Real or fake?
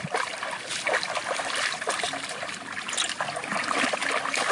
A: real